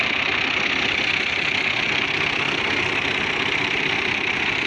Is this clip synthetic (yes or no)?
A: yes